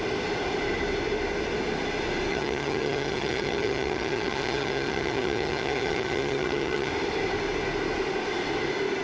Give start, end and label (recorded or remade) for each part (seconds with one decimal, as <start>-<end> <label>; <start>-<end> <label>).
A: 0.0-2.3 recorded; 2.3-6.9 remade; 6.9-9.0 recorded